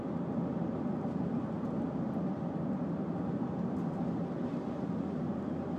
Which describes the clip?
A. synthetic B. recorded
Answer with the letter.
B